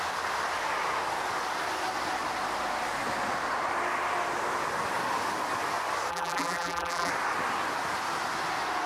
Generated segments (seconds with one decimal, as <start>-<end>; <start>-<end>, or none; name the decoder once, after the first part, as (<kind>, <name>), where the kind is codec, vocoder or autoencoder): 6.1-7.1 (vocoder, BigVGAN v2)